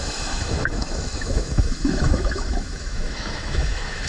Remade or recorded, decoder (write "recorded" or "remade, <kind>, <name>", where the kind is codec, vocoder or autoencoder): remade, autoencoder, DAC-VAE